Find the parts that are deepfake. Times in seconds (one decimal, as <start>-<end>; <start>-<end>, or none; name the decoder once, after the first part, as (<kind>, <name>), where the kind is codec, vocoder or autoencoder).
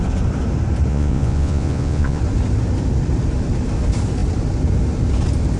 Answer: 0.9-2.2 (vocoder, Vocos)